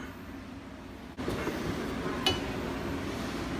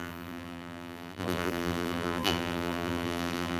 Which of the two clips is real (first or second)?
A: first